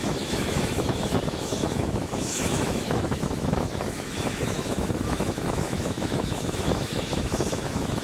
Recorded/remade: remade